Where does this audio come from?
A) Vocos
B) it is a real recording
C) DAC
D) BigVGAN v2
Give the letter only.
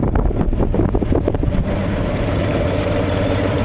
D